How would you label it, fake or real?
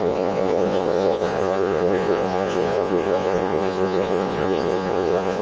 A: fake